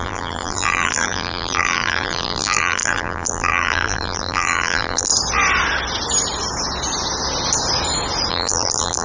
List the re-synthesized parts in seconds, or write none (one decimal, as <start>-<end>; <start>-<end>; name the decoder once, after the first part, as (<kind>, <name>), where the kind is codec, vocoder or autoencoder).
0.0-5.1 (vocoder, BigVGAN v2); 8.3-9.0